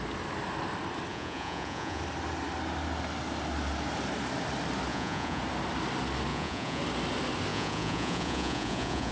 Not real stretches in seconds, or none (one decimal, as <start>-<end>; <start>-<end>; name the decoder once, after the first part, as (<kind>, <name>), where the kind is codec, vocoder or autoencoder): 1.1-2.0 (vocoder, Vocos); 4.9-5.4; 6.3-6.8; 7.5-9.1